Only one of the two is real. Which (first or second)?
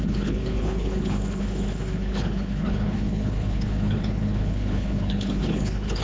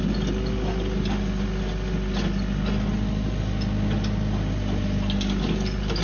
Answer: second